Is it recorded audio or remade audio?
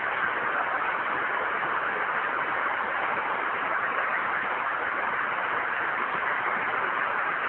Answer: recorded